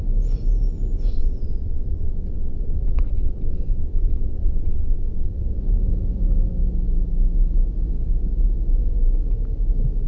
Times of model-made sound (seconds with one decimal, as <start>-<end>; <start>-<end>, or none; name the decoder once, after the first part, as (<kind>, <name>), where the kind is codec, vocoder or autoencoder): 1.1-5.6 (vocoder, WaveNeXt)